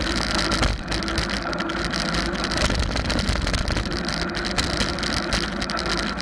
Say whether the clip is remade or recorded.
recorded